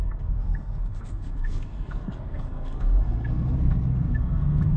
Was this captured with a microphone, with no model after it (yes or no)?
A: no